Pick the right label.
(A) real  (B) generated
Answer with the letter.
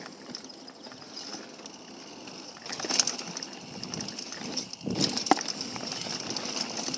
A